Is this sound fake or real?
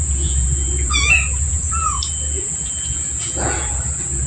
fake